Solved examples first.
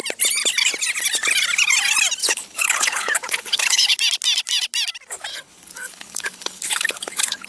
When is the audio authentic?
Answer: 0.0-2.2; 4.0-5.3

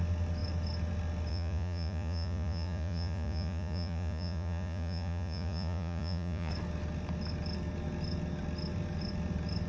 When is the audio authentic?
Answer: 0.0-1.3; 6.5-9.7

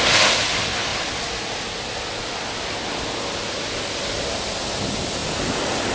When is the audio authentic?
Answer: 0.0-5.9

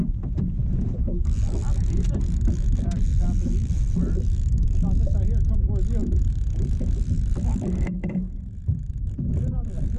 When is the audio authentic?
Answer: none

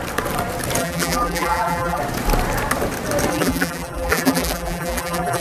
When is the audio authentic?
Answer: 0.0-0.8; 2.0-3.3

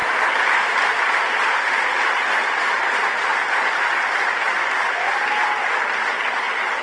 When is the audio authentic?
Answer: 0.0-6.8

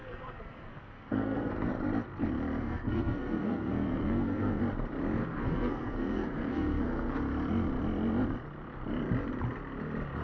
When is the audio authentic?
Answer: 1.7-2.6; 4.6-5.2; 7.2-10.2